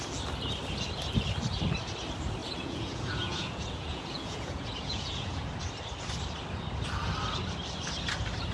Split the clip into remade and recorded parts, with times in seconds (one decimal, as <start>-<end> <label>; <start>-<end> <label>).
0.0-2.4 recorded; 2.4-5.5 remade; 5.5-8.5 recorded